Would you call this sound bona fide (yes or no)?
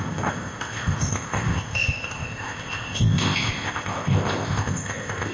no